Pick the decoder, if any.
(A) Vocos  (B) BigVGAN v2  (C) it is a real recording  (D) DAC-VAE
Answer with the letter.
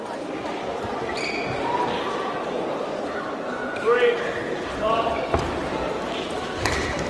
B